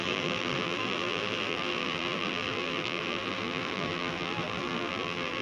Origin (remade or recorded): remade